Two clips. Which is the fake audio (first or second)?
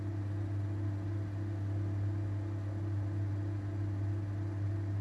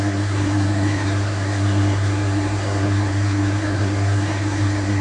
second